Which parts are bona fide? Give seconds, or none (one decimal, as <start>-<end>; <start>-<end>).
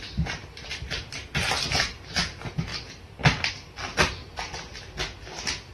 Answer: 0.0-5.7